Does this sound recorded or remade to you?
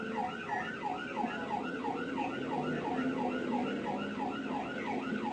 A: recorded